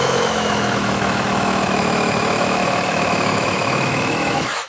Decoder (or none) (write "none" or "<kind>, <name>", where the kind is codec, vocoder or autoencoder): autoencoder, DAC-VAE